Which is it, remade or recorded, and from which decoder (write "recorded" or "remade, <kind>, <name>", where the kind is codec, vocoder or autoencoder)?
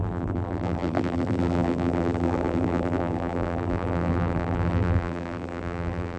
remade, vocoder, BigVGAN v2